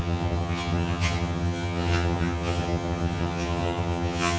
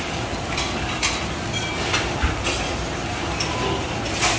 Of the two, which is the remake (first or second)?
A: first